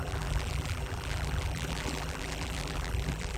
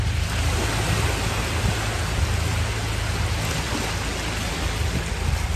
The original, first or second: second